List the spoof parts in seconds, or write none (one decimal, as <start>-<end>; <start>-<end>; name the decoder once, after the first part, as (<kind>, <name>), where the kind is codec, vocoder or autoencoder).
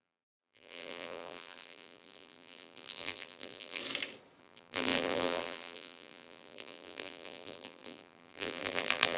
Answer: 0.0-3.8 (vocoder, BigVGAN v2); 4.4-9.2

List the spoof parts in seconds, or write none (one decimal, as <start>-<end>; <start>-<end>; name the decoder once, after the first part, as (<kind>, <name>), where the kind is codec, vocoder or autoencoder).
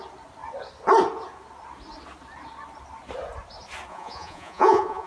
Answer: 3.9-5.1 (vocoder, Vocos)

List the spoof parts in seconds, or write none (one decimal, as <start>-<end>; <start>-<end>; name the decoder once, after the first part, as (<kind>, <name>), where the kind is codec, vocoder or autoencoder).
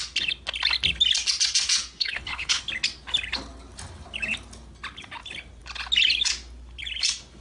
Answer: 2.0-2.6 (codec, HILCodec)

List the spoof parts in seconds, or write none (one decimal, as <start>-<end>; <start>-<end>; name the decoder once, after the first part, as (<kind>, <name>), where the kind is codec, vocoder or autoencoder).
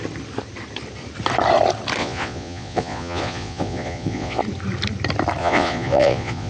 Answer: 2.0-4.4 (vocoder, Vocos); 5.4-6.5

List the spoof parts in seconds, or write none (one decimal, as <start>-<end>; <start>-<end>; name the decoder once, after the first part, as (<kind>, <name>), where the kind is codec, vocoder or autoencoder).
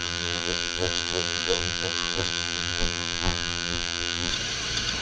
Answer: 0.0-4.3 (vocoder, BigVGAN v2)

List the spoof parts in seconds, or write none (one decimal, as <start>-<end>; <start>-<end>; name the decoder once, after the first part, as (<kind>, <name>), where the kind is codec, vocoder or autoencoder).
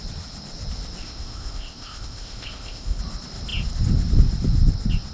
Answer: 1.0-3.0 (codec, ZipCodec)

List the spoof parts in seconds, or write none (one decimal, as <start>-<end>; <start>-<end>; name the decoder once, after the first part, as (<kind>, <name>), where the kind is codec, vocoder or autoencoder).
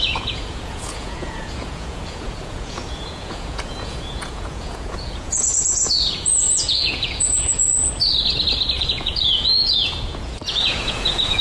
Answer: 0.0-7.7 (vocoder, Vocos); 8.8-11.4